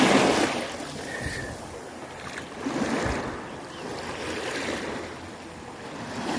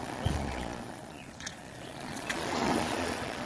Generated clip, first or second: second